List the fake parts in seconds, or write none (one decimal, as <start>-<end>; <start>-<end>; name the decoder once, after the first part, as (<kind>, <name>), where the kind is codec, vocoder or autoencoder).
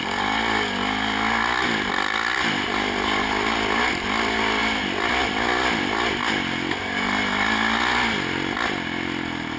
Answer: none